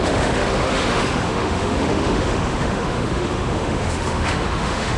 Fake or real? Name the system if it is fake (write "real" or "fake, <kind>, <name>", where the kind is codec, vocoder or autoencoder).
fake, autoencoder, DAC-VAE